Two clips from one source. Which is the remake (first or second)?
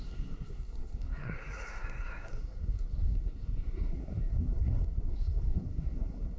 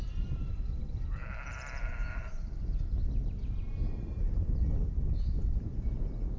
first